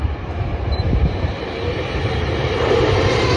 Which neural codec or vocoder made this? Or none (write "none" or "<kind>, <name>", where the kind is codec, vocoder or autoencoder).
vocoder, BigVGAN v2